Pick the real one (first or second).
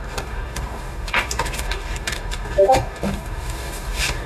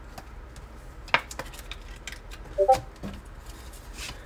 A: second